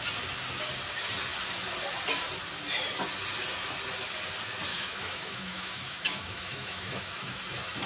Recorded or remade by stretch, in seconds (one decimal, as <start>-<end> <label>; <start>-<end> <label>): 0.0-4.7 recorded; 4.7-7.4 remade; 7.4-7.9 recorded